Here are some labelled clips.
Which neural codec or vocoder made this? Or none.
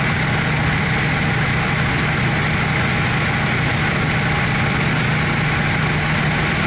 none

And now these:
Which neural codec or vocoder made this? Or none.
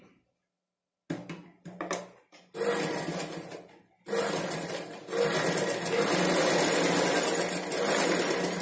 none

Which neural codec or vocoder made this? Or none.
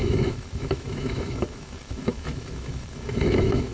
autoencoder, DAC-VAE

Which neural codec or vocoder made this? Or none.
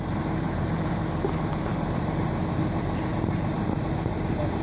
vocoder, BigVGAN v2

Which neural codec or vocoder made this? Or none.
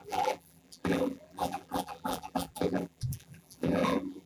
vocoder, BigVGAN v2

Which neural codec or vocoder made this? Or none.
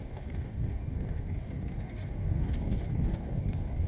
codec, DAC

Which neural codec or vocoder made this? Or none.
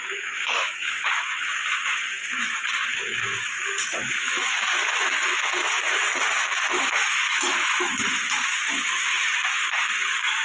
autoencoder, DAC-VAE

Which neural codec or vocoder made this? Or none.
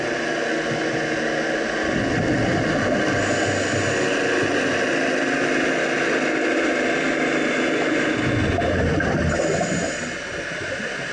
none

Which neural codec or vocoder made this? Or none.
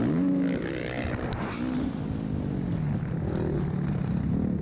none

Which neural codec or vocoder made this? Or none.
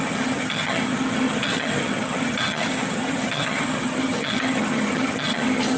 vocoder, HiFi-GAN